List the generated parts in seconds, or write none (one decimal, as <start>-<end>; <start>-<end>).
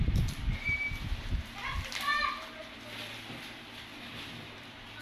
0.0-2.1; 4.0-5.0